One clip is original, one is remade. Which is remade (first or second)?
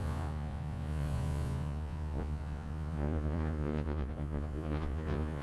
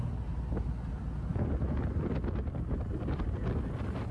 first